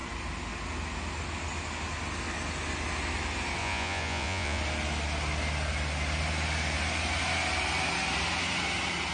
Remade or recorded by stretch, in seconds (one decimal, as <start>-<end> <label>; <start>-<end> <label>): 0.0-3.6 recorded; 3.6-4.6 remade; 4.6-9.1 recorded